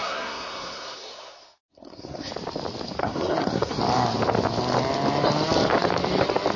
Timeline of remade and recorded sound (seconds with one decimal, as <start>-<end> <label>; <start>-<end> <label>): 0.0-2.3 remade; 2.3-3.0 recorded; 3.0-3.8 remade; 3.8-6.6 recorded